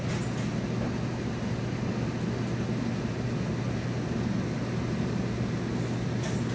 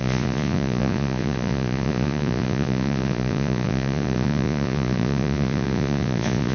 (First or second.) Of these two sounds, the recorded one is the first